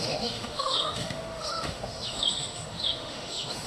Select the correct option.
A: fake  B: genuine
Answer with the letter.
A